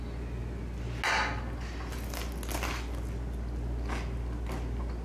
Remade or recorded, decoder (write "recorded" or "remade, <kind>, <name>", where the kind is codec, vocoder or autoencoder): recorded